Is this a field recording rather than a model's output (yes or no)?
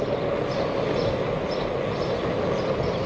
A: yes